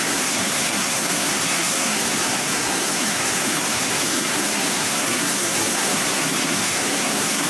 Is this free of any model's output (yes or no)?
no